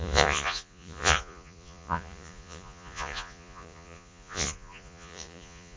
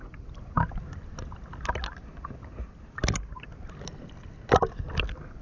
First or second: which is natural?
second